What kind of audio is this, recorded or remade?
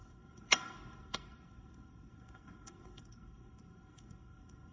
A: remade